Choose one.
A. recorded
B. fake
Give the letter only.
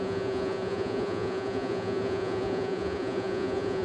B